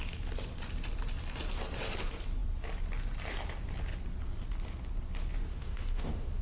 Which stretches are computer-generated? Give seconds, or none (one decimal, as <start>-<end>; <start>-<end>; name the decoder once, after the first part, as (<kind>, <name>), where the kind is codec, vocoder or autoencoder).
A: 5.5-6.4 (autoencoder, DAC-VAE)